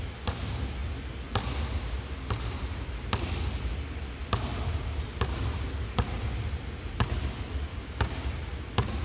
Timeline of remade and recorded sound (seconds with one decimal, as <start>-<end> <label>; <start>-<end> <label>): 0.0-7.7 recorded; 7.7-8.3 remade; 8.3-9.0 recorded